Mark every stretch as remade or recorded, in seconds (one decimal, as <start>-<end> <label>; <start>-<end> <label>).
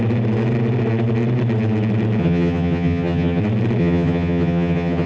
0.0-2.2 recorded; 2.2-3.4 remade; 3.4-3.8 recorded; 3.8-5.1 remade